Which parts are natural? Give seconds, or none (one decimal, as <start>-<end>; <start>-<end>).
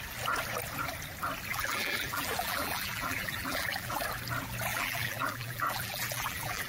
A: 0.0-1.5; 4.0-4.7